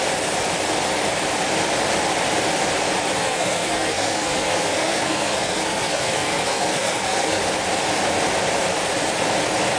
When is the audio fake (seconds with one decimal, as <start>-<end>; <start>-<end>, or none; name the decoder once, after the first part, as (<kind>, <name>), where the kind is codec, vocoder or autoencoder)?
3.2-7.4 (codec, SNAC)